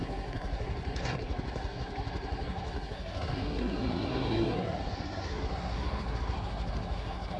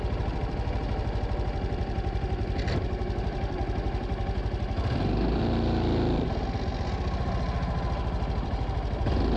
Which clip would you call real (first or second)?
second